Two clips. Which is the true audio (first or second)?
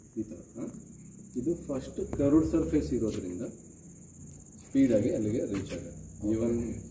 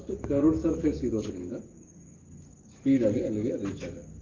first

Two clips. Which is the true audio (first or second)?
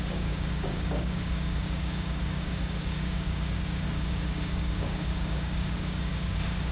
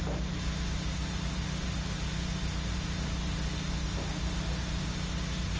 second